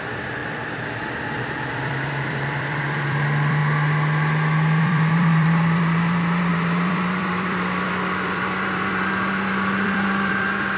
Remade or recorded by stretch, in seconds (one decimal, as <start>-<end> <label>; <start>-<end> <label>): 0.0-3.6 remade; 3.6-4.8 recorded; 4.8-10.8 remade